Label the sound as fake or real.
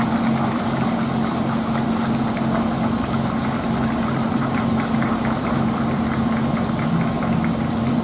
real